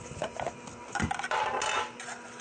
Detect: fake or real real